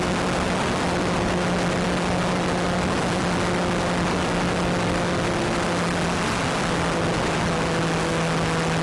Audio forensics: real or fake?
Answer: real